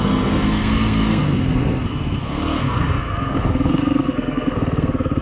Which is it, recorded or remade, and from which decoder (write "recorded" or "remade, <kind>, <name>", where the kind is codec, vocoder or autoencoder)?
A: remade, codec, SNAC